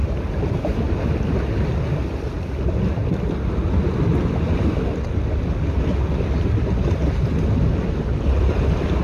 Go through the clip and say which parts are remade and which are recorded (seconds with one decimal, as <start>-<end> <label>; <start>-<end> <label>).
0.0-9.0 recorded